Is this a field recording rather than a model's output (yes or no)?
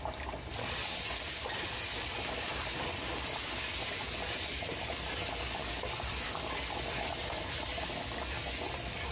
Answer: yes